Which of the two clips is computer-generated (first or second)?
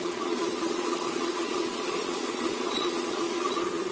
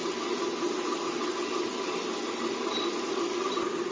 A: first